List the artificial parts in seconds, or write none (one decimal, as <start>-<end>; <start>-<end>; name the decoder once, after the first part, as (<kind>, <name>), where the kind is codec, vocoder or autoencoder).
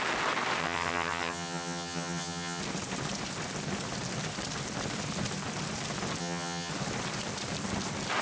0.6-2.6 (vocoder, HiFi-GAN); 6.2-6.7